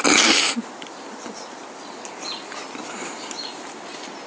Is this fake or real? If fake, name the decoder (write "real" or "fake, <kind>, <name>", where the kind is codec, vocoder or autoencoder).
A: real